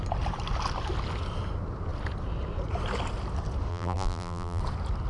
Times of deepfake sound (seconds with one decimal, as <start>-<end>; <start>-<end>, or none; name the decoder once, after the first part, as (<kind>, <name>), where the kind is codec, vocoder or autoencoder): 3.7-4.6 (vocoder, BigVGAN v2)